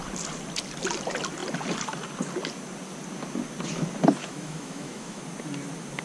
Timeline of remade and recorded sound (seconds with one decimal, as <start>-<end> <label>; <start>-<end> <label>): 0.0-4.2 recorded; 4.2-5.2 remade; 5.2-6.0 recorded